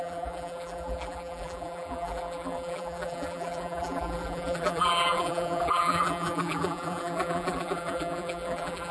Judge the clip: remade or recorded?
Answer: remade